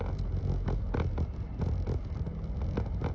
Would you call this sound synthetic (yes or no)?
no